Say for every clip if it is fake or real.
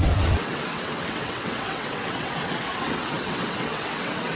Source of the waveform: fake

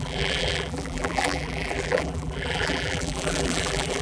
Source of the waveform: fake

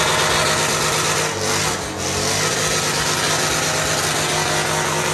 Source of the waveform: real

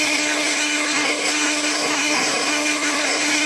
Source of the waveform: fake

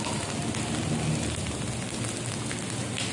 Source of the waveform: real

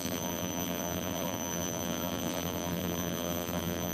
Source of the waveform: fake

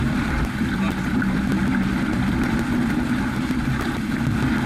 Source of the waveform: real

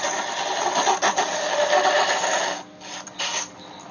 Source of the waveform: real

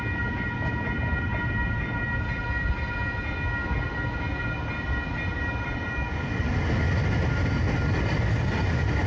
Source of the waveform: real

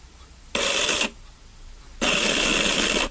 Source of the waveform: fake